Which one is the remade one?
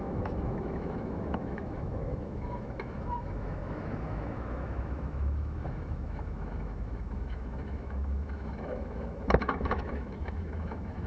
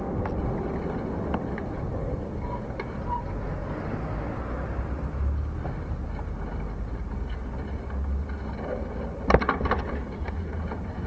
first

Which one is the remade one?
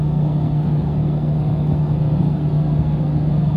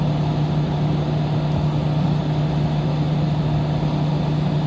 first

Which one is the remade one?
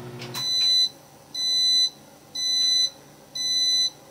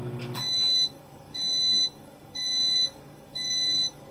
second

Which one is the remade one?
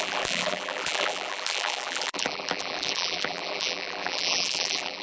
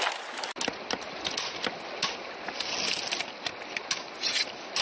first